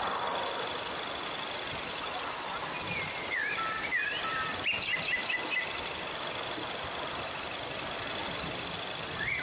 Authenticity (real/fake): real